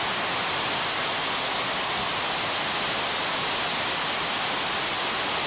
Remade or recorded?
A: recorded